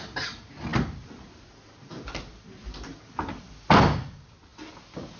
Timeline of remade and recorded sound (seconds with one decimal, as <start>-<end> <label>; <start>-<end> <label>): 0.0-5.2 recorded